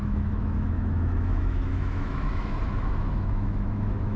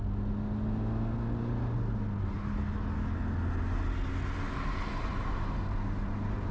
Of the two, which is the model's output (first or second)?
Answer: first